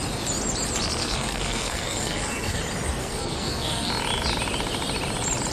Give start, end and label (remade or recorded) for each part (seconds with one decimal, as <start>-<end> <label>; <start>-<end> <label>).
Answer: 0.0-1.0 recorded; 1.0-2.6 remade; 2.6-3.0 recorded; 3.0-3.9 remade; 3.9-5.5 recorded